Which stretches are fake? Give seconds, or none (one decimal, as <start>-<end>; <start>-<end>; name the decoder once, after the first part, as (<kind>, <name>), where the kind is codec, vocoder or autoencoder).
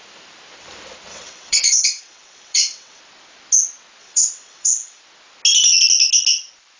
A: 1.1-3.0 (vocoder, WaveNeXt); 4.0-5.0